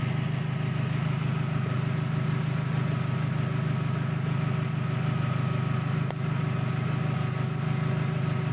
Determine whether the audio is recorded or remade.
recorded